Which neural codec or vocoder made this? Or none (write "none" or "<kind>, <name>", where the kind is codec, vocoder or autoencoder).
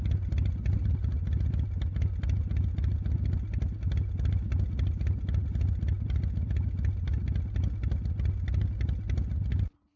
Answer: none